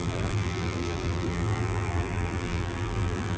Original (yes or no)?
no